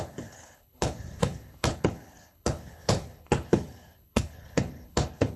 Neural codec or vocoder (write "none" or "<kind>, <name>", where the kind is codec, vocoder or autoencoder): codec, HILCodec